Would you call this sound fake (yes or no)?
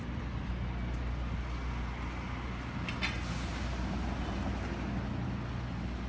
no